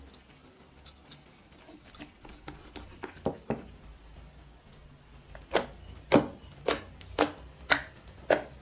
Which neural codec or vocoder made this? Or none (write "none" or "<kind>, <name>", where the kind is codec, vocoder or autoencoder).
none